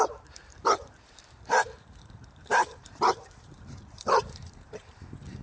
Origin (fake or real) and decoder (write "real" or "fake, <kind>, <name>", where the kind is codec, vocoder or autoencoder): fake, vocoder, BigVGAN v2